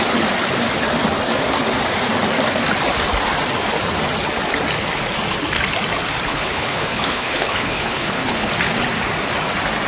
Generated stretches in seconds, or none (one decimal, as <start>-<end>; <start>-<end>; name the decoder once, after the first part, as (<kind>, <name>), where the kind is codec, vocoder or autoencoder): 6.3-8.5 (codec, HILCodec)

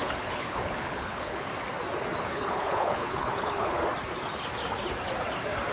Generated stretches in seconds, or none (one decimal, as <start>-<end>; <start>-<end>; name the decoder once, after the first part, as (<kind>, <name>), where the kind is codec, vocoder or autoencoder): 0.0-1.5 (codec, HILCodec); 2.2-3.8